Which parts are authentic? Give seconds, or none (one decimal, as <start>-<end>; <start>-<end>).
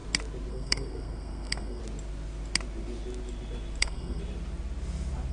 0.0-0.5; 1.8-3.8; 4.2-5.3